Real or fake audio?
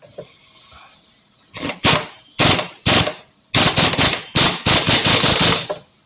real